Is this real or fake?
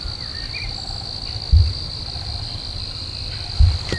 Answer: real